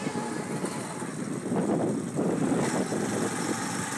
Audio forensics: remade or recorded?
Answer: recorded